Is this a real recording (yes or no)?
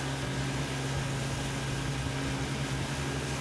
yes